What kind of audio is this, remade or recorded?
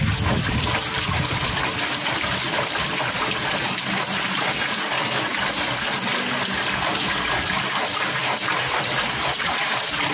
recorded